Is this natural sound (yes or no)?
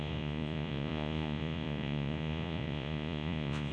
no